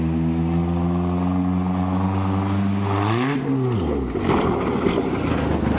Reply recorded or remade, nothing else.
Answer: recorded